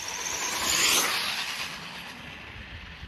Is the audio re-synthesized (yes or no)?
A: no